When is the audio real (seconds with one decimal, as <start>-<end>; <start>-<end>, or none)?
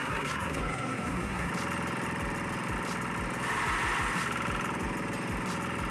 1.5-5.9